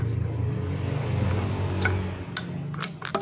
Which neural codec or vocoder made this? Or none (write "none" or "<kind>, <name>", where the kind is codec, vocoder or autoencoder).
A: none